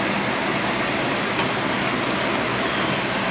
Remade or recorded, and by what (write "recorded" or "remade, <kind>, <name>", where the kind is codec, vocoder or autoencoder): recorded